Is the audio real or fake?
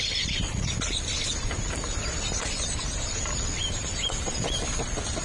fake